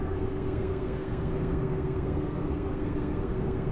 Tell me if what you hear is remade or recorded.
remade